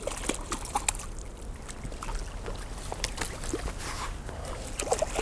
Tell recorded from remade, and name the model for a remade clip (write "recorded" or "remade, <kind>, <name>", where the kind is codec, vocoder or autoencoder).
recorded